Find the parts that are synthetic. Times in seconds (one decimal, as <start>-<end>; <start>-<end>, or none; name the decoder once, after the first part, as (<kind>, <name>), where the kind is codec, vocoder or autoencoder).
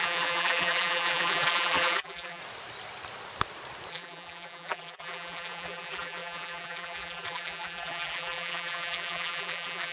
0.0-2.4 (vocoder, BigVGAN v2); 3.9-9.9